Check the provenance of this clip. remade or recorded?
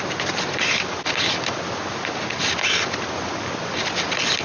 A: recorded